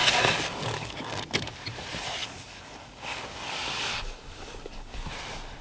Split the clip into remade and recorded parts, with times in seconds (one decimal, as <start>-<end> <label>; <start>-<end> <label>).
0.0-1.2 remade; 1.2-2.2 recorded; 2.2-5.1 remade; 5.1-5.6 recorded